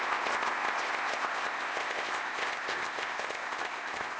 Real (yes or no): no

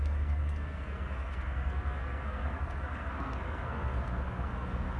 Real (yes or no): no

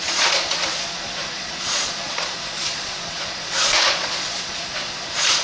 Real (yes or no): no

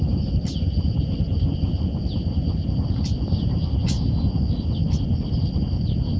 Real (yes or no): yes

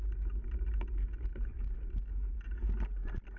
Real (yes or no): yes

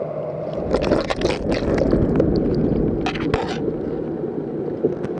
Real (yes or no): yes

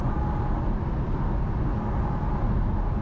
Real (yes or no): yes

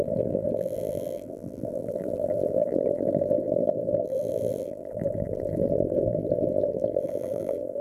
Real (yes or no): no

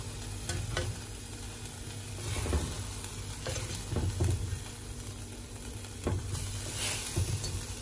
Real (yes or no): yes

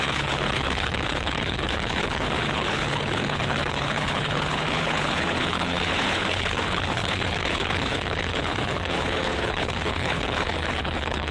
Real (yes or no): no